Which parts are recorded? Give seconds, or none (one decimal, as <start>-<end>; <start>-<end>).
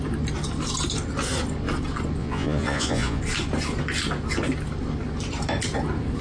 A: 0.0-2.2; 3.2-6.2